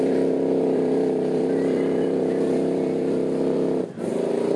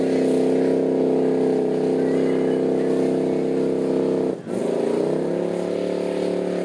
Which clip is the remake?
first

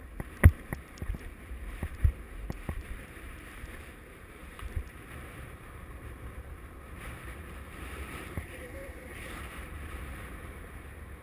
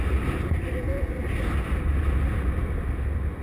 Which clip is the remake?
first